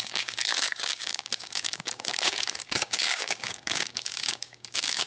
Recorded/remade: remade